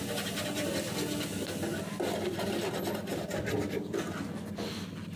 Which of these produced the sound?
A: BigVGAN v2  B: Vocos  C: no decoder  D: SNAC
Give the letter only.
C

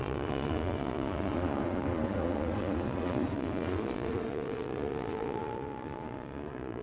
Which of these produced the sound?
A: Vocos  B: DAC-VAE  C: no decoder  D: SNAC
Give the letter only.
A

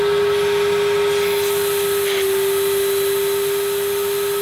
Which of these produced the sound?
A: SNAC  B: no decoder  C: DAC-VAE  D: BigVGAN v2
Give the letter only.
B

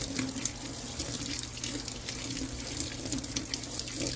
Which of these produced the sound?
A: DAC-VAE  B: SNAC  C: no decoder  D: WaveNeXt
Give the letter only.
C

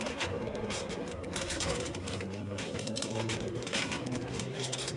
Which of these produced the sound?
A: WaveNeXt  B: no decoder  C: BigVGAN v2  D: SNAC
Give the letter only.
D